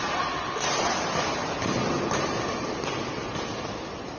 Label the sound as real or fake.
real